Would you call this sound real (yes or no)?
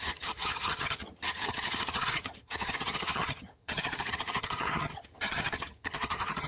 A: no